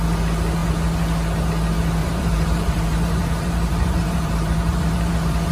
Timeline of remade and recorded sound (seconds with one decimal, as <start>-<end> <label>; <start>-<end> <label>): 0.0-2.0 recorded; 2.0-5.1 remade; 5.1-5.5 recorded